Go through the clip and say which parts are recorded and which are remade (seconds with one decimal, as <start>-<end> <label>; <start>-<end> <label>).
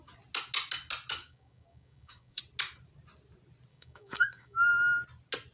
0.0-1.2 recorded; 1.2-2.4 remade; 2.4-3.7 recorded; 3.7-4.7 remade; 4.7-5.5 recorded